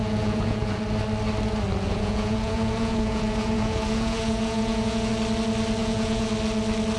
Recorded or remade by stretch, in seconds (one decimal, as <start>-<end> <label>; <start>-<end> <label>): 0.0-0.8 remade; 0.8-1.9 recorded; 1.9-5.1 remade; 5.1-5.8 recorded; 5.8-6.3 remade; 6.3-7.0 recorded